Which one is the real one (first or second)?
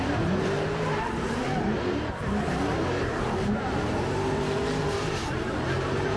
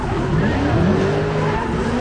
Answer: second